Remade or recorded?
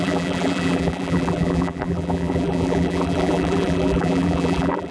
remade